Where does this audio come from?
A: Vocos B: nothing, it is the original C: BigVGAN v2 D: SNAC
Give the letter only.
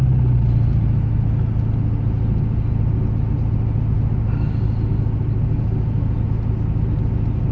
B